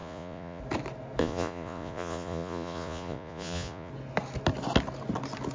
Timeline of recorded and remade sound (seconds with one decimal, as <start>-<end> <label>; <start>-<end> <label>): 0.0-0.6 remade; 0.6-1.2 recorded; 1.2-3.9 remade; 3.9-5.5 recorded